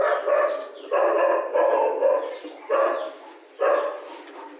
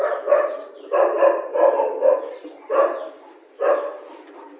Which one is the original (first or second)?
first